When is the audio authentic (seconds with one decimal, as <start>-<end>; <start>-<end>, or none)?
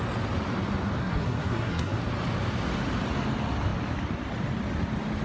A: 0.0-1.0; 2.0-5.2